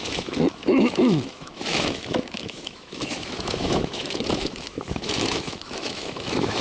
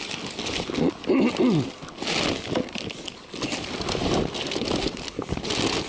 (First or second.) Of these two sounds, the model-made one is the first